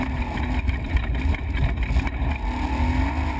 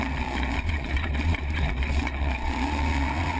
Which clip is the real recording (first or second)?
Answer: first